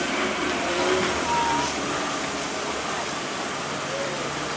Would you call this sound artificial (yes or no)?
no